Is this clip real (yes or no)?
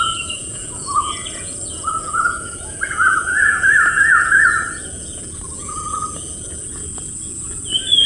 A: no